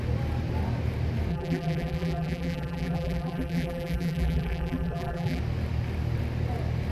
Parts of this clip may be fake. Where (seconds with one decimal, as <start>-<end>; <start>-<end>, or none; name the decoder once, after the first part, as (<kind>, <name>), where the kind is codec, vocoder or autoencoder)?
1.3-5.4 (vocoder, BigVGAN v2)